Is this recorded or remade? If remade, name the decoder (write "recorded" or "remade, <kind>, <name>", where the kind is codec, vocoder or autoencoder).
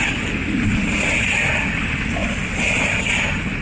recorded